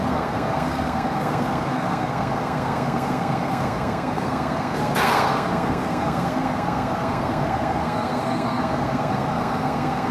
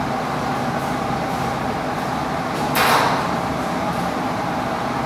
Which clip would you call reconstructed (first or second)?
first